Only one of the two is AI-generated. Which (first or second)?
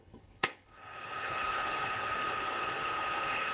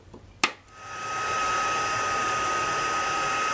first